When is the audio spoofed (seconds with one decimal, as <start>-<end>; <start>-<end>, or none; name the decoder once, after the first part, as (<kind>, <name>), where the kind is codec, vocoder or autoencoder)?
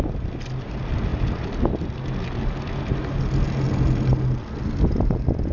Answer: none